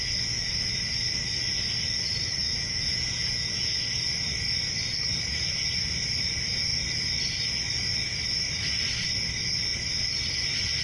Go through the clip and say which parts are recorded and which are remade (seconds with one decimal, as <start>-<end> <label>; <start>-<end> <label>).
0.0-2.4 recorded; 2.4-3.7 remade; 3.7-10.8 recorded